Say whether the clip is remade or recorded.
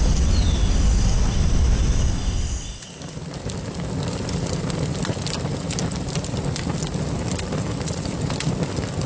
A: recorded